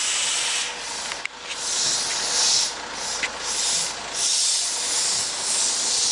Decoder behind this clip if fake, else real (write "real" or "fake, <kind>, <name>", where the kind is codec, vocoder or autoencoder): real